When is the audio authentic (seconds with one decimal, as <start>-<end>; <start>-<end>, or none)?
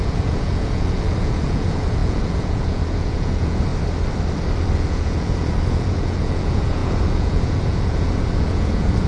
3.7-4.6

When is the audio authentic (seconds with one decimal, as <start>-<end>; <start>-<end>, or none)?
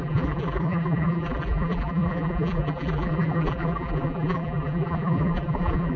none